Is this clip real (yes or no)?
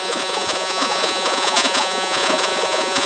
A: no